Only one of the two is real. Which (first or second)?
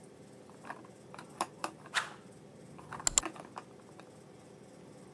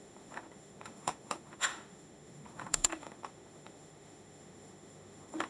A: first